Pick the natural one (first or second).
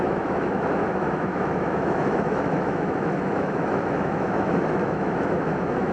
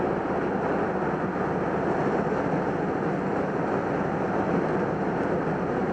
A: second